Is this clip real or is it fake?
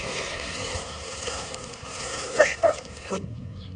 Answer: fake